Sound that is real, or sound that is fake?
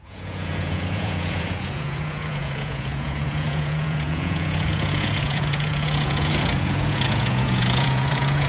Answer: fake